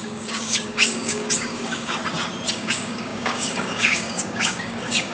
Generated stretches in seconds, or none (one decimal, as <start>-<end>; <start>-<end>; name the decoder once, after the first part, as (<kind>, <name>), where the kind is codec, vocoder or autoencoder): 0.0-2.0 (codec, DAC); 2.5-5.1